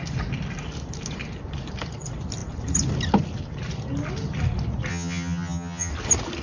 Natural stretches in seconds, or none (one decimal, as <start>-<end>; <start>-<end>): 0.0-4.9; 5.9-6.4